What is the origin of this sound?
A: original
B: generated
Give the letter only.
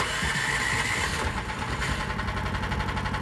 A